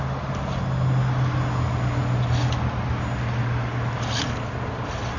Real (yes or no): yes